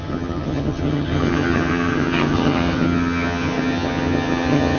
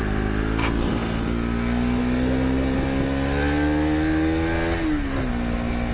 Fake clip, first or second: first